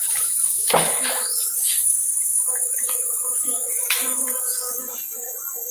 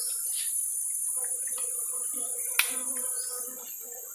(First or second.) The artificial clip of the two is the first